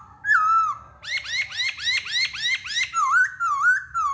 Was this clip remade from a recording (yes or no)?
no